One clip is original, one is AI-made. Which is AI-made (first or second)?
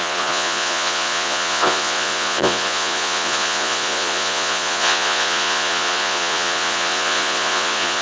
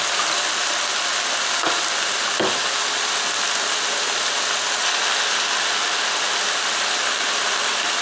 first